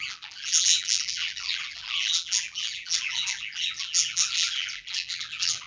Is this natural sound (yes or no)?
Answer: no